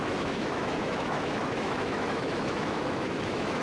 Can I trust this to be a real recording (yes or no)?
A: no